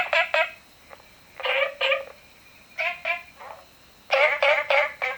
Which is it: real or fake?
real